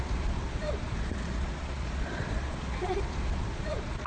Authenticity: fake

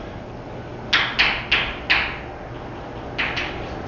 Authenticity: real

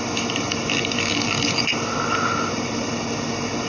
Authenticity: real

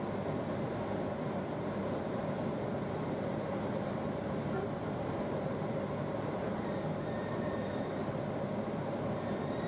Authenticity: fake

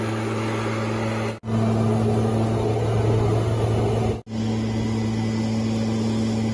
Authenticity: real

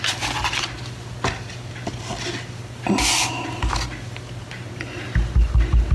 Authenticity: real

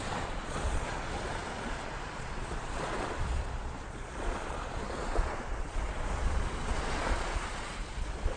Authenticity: fake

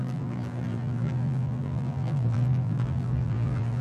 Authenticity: fake